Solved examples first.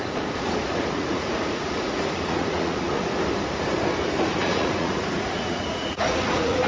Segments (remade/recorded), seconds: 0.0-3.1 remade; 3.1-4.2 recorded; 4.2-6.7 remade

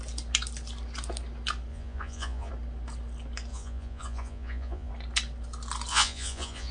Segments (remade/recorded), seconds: 0.0-1.7 recorded; 1.7-2.5 remade; 2.5-3.5 recorded; 3.5-4.9 remade; 4.9-5.9 recorded; 5.9-6.7 remade

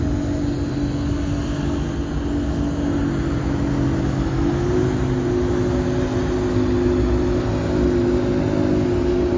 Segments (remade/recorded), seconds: 0.0-9.4 recorded

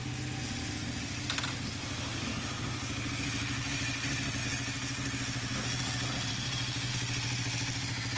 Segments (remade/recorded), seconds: 0.0-8.2 recorded

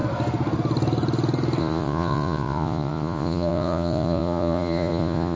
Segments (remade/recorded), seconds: 0.0-1.6 recorded; 1.6-5.4 remade

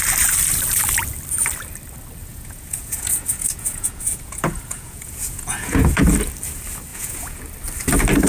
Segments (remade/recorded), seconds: 0.0-2.2 recorded; 2.2-6.0 remade; 6.0-6.9 recorded; 6.9-7.4 remade; 7.4-8.3 recorded

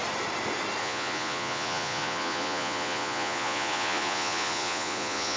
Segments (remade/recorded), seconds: 0.0-0.8 recorded; 0.8-5.4 remade

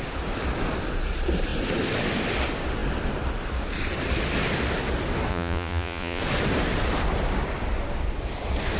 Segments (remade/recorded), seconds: 0.0-5.3 recorded; 5.3-6.2 remade; 6.2-8.8 recorded